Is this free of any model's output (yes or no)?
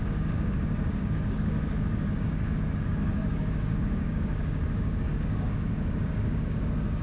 no